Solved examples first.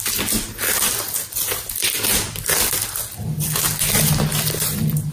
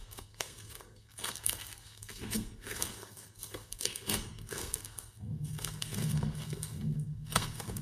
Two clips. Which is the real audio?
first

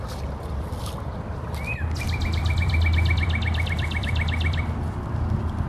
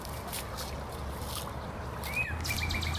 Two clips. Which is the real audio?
second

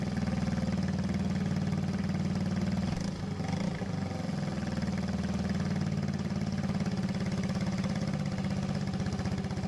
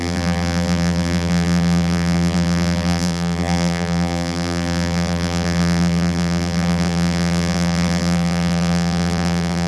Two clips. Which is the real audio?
first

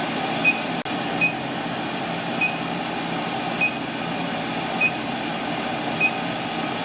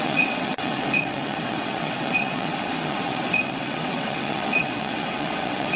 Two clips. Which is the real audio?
first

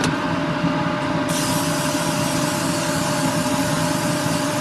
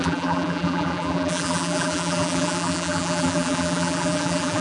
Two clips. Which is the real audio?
first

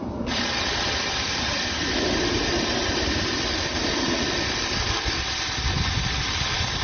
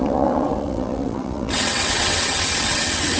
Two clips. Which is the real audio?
first